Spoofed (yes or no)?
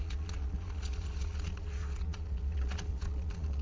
yes